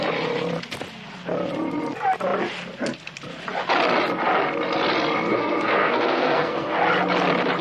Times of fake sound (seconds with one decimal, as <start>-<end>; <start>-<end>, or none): 5.3-6.8